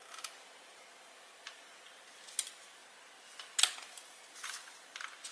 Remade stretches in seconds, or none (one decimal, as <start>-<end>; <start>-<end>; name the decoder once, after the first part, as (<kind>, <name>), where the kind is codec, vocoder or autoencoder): none